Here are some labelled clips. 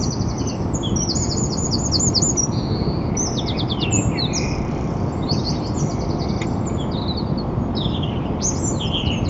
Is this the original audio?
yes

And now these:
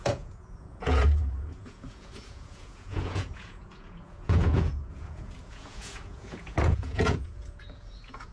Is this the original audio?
no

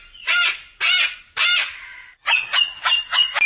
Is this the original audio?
yes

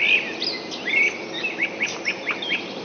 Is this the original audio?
yes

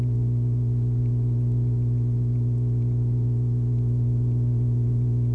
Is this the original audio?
no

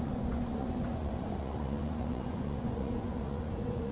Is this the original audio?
no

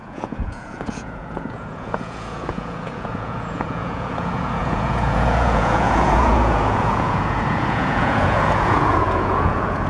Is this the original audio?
no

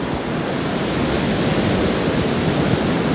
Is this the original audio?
yes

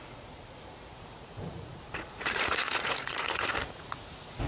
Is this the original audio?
no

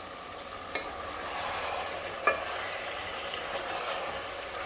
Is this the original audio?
yes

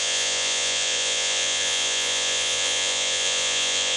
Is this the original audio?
no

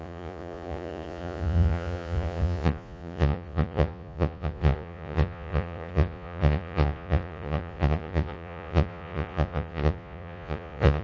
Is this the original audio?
no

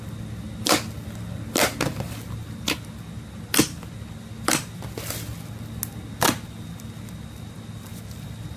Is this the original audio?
yes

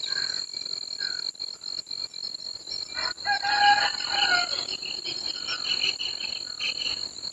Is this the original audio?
yes